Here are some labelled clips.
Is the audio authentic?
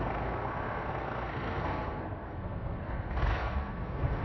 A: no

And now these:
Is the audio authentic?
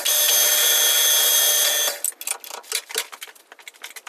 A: yes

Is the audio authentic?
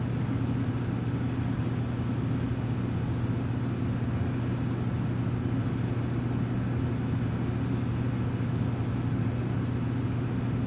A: yes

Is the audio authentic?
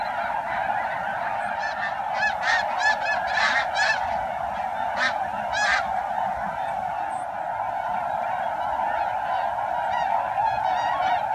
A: yes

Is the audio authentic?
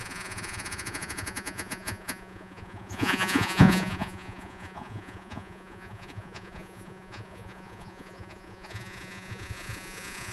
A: no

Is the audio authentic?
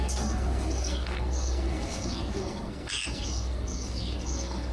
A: no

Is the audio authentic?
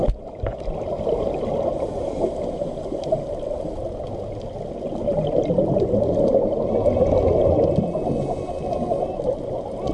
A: yes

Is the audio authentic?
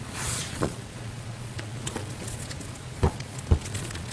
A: no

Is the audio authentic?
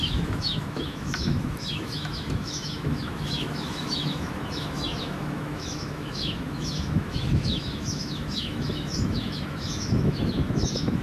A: no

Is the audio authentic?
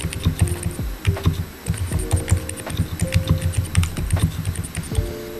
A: yes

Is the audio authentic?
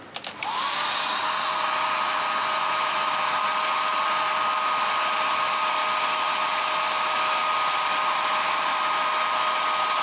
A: yes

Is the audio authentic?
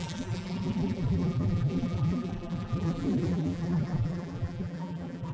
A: no